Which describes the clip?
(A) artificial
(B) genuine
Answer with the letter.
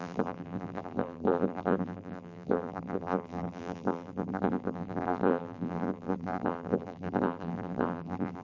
A